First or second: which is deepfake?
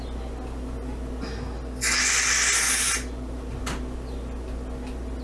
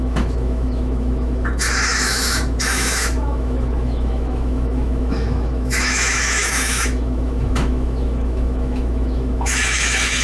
second